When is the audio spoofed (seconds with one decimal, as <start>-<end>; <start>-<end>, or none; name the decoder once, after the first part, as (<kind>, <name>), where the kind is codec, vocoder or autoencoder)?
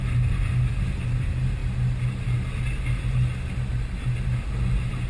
none